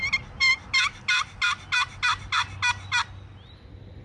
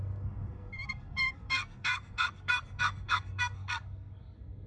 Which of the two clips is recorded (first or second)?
first